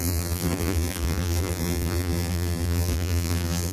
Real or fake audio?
fake